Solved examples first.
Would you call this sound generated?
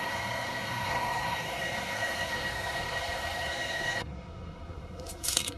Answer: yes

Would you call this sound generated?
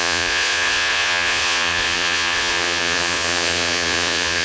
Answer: yes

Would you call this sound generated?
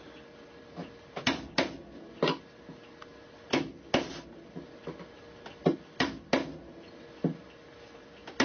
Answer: no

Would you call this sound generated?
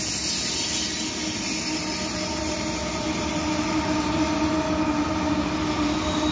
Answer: no